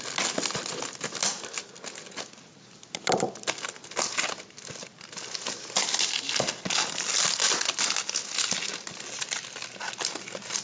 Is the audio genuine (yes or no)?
yes